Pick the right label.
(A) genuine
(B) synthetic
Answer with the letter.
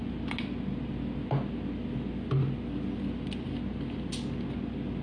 A